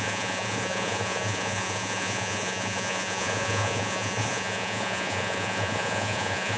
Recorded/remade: remade